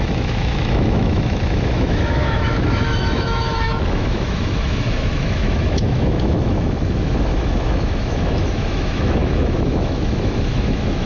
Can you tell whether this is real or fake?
fake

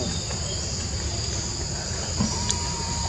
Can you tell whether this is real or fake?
real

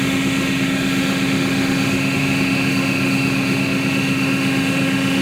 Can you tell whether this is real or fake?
fake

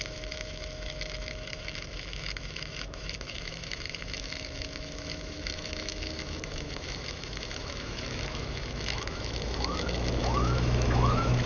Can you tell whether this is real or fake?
fake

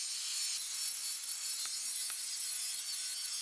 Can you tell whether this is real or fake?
real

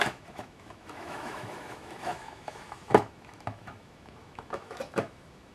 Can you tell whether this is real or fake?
fake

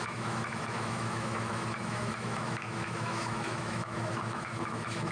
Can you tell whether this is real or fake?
fake